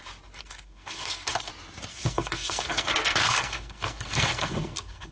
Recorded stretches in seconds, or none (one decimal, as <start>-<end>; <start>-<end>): 0.0-0.4; 1.5-1.9